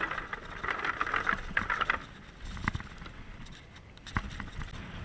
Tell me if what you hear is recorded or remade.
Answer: recorded